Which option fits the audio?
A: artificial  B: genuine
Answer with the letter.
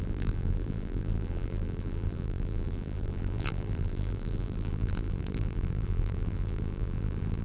A